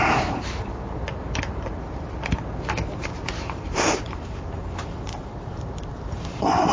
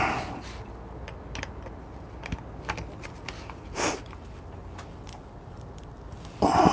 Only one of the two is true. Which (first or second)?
second